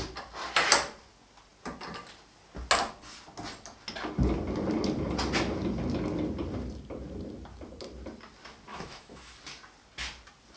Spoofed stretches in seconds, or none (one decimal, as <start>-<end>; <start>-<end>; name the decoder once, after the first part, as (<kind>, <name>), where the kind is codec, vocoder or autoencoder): 8.7-9.3 (autoencoder, DAC-VAE)